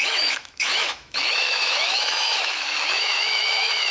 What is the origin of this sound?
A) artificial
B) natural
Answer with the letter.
A